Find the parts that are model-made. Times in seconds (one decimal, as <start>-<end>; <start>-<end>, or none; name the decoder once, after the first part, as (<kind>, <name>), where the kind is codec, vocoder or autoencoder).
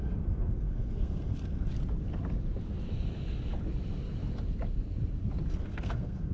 0.0-1.7 (codec, SNAC); 5.5-6.3